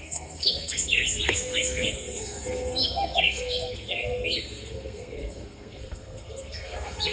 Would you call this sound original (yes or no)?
no